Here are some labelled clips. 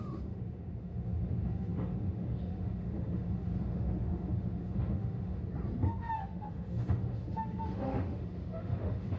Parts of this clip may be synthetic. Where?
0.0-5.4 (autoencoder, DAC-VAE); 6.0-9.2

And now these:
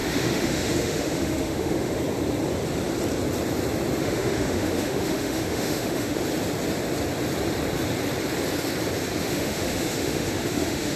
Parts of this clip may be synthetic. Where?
0.0-2.0 (autoencoder, DAC-VAE); 4.0-6.2; 9.2-11.0

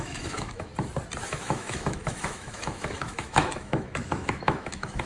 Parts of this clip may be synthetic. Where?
0.0-0.7 (autoencoder, DAC-VAE); 1.3-5.1

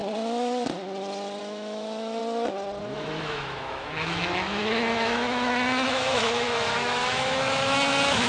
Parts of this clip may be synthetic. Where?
1.4-2.2 (autoencoder, DAC-VAE); 2.8-8.3